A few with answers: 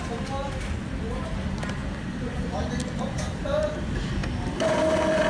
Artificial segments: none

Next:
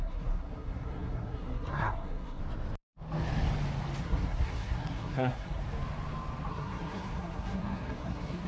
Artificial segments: 0.0-2.4; 4.0-5.6; 6.5-8.5

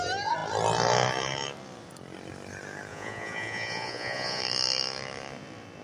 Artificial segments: 2.9-4.4

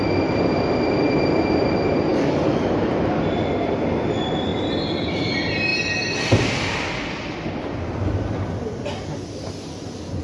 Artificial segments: 2.1-2.9

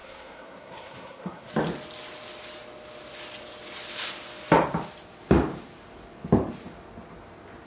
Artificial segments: 0.0-1.5

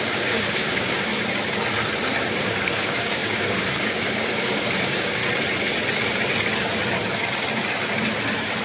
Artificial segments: 0.0-1.1; 2.3-5.2